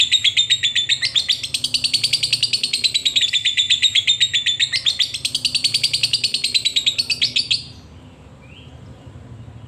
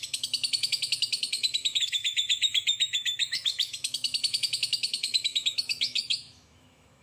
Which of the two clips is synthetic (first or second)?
second